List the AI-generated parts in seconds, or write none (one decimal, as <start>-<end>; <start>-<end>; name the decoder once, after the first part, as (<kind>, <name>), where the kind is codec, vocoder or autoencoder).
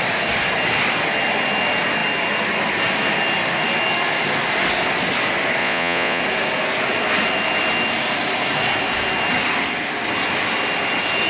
5.6-6.2 (vocoder, Vocos)